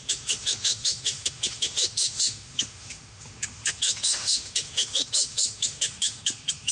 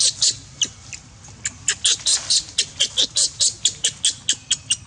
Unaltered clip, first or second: second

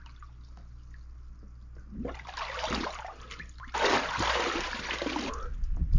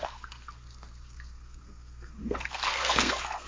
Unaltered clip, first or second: first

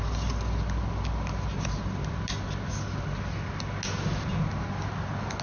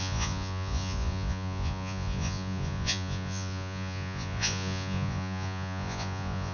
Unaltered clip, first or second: first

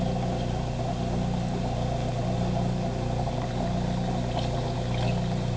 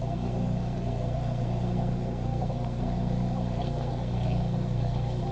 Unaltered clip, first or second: first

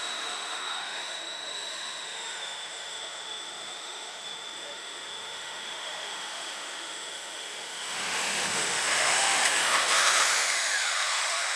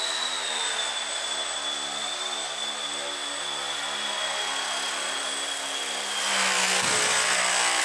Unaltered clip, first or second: second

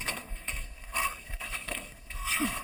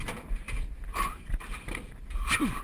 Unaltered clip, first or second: second